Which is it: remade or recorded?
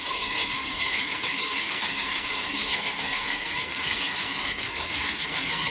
remade